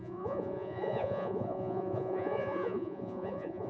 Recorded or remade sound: remade